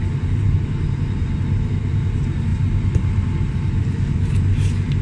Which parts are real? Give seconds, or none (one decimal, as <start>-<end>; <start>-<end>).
0.0-5.0